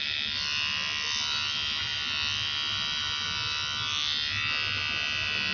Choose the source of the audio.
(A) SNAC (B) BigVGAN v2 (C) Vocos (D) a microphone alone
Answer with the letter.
D